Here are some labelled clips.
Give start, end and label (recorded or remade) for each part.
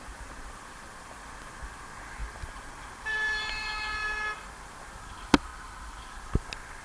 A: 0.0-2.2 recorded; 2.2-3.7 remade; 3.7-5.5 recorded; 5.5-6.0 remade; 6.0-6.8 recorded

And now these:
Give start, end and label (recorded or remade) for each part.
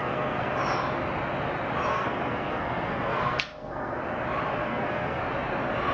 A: 0.0-0.6 remade; 0.6-1.9 recorded; 1.9-4.0 remade; 4.0-4.6 recorded; 4.6-5.2 remade; 5.2-5.9 recorded